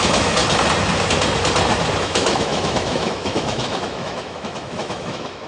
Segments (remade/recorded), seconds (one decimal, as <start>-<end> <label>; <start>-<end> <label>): 0.0-0.4 remade; 0.4-2.0 recorded; 2.0-5.5 remade